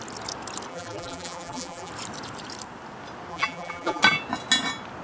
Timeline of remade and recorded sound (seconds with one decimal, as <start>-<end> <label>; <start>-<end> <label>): 0.0-0.7 recorded; 0.7-1.9 remade; 1.9-3.3 recorded; 3.3-4.0 remade; 4.0-5.0 recorded